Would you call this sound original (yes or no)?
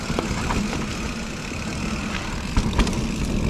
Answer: yes